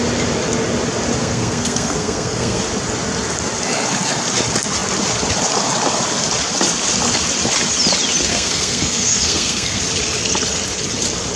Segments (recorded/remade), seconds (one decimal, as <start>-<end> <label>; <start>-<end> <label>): 0.0-1.2 recorded; 1.2-2.6 remade; 2.6-8.3 recorded; 8.3-9.8 remade; 9.8-11.4 recorded